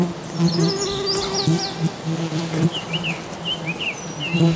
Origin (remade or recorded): recorded